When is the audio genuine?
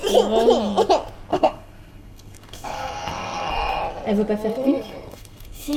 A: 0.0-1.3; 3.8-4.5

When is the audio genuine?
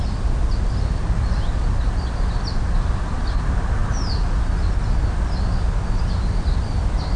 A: 0.0-7.2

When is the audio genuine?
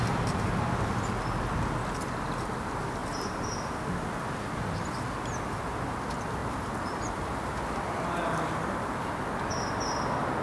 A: 0.0-3.0; 3.5-6.4; 7.6-10.4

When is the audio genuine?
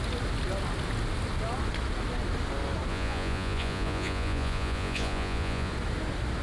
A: 0.0-2.9; 5.7-6.4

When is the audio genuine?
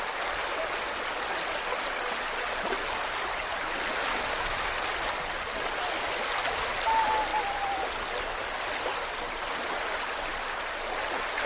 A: 0.0-11.5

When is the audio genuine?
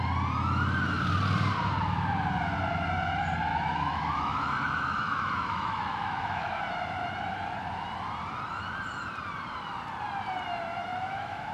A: 0.0-3.5; 6.6-10.9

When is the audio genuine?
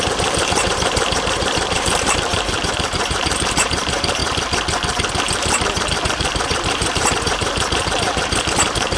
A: 4.2-6.0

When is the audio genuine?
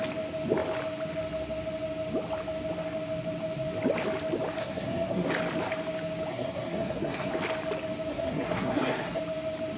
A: 0.0-4.6; 5.3-6.3; 7.3-8.1; 9.2-9.8